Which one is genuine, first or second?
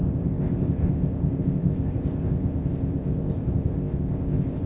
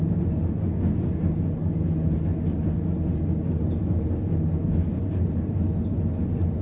second